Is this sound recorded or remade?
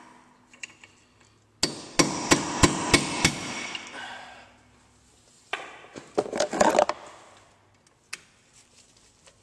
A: recorded